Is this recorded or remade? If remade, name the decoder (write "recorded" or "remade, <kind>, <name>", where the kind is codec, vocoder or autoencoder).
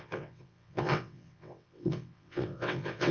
remade, vocoder, WaveNeXt